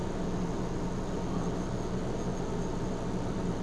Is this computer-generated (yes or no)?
no